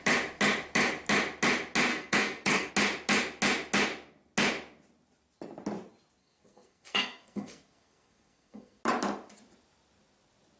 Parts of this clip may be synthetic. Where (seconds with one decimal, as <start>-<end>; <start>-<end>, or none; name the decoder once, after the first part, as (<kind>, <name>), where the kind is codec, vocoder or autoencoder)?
1.9-2.7 (codec, SNAC); 6.2-8.8